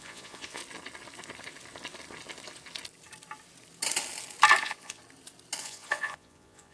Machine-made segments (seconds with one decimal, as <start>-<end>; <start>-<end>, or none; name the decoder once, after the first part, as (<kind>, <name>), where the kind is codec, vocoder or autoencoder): 0.0-0.6 (vocoder, Vocos); 4.6-5.0; 5.6-6.7